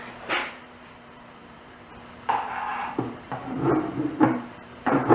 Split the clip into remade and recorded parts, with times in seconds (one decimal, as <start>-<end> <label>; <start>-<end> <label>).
0.0-0.4 recorded; 0.4-1.9 remade; 1.9-2.7 recorded; 2.7-5.1 remade